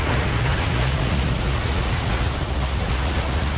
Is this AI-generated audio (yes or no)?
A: yes